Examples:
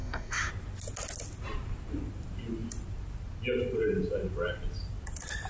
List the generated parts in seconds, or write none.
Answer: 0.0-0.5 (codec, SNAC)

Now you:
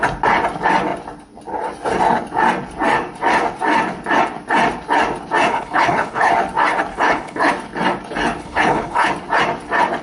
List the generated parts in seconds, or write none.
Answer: 5.5-6.3 (codec, HILCodec); 6.9-7.5; 8.4-9.1

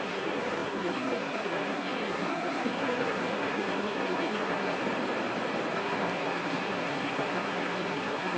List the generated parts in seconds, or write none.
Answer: 0.0-4.8 (codec, SNAC); 5.8-8.4